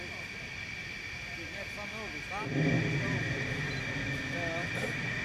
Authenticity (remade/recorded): recorded